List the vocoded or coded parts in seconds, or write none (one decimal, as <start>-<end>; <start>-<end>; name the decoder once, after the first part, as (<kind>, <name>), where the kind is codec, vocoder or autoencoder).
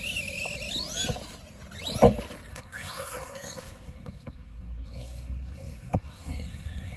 2.5-7.0 (codec, SNAC)